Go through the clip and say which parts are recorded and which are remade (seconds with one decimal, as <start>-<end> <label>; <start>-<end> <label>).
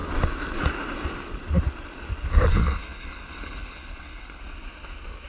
0.0-2.5 recorded; 2.5-4.4 remade; 4.4-5.3 recorded